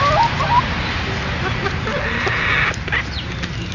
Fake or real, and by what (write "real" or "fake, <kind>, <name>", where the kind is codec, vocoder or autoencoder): real